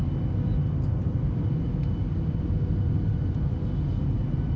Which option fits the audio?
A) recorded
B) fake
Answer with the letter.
A